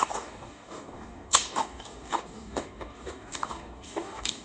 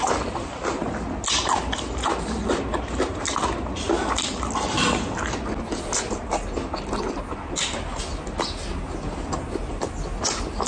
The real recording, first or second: second